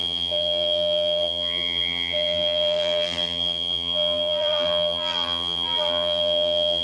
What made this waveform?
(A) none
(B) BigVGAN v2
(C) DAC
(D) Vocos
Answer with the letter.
B